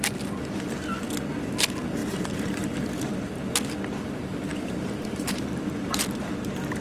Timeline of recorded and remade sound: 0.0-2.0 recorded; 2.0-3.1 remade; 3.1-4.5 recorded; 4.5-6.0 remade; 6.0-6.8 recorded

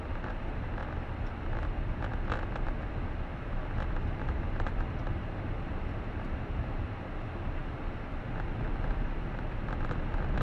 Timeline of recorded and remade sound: 0.0-0.8 remade; 0.8-4.0 recorded; 4.0-7.6 remade; 7.6-10.4 recorded

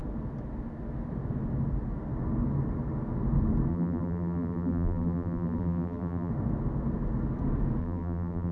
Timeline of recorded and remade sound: 0.0-3.7 recorded; 3.7-6.3 remade; 6.3-7.8 recorded; 7.8-8.5 remade

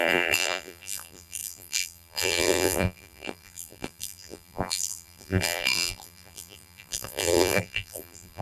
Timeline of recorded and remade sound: 0.0-8.4 remade

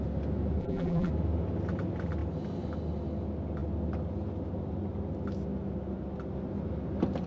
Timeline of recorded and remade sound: 0.0-0.6 recorded; 0.6-1.1 remade; 1.1-7.3 recorded